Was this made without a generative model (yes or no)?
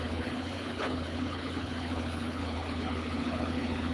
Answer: no